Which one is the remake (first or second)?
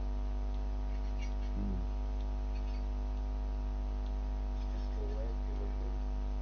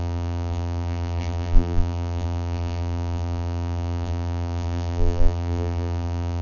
second